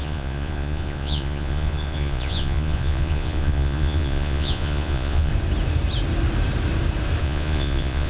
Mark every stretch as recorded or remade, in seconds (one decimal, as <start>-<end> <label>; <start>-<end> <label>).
0.0-5.3 remade; 5.3-7.2 recorded; 7.2-8.1 remade